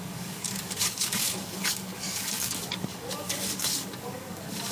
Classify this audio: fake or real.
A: fake